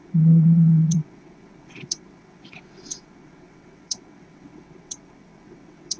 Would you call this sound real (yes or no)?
no